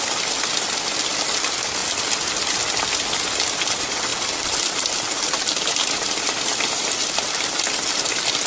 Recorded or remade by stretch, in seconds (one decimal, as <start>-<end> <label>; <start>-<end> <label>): 0.0-8.5 recorded